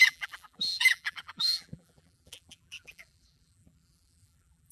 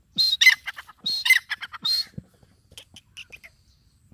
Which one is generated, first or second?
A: first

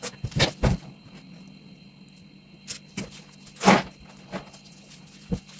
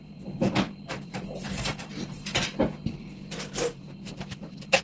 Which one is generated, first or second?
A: second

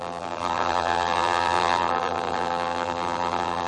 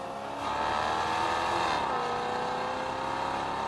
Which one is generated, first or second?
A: first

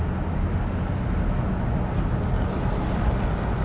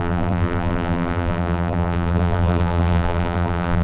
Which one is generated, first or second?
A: second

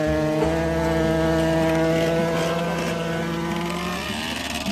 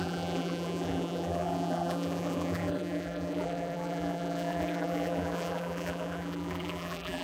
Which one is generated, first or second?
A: second